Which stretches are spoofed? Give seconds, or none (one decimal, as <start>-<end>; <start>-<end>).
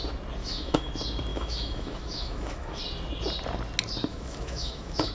0.4-0.9; 1.3-2.8; 4.1-5.1